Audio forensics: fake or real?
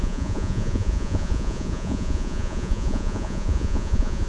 fake